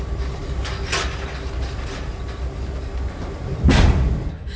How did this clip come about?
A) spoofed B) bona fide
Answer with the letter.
B